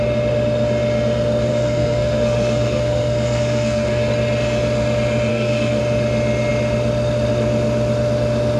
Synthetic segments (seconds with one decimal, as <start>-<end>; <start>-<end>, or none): 1.5-4.1; 5.3-5.8